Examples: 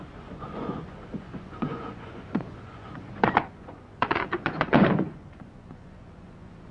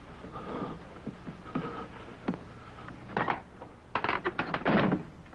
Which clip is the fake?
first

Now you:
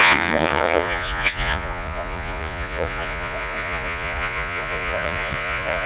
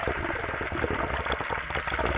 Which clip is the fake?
first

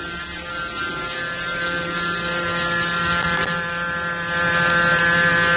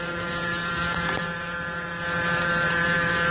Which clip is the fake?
second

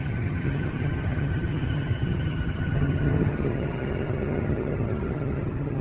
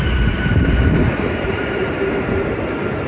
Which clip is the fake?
first